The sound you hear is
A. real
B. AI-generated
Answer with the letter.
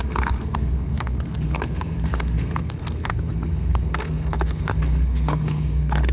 B